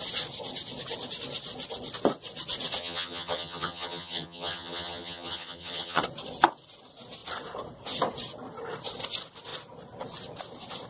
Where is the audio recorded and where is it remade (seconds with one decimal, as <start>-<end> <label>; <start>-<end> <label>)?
0.0-2.8 recorded; 2.8-6.0 remade; 6.0-10.9 recorded